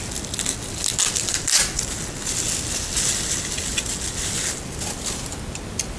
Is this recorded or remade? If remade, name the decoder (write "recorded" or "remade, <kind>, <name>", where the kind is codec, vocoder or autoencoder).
recorded